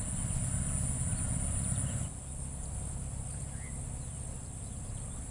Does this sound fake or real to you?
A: real